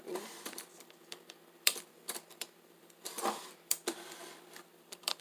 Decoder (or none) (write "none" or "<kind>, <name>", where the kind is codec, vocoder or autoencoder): vocoder, BigVGAN v2